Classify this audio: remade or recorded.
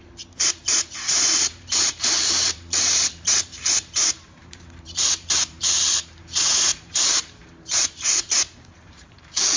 remade